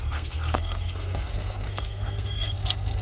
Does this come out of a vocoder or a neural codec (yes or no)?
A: yes